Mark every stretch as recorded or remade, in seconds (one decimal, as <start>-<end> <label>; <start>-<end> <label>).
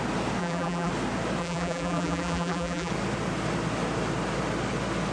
0.0-0.4 recorded; 0.4-0.9 remade; 0.9-1.4 recorded; 1.4-2.9 remade; 2.9-5.1 recorded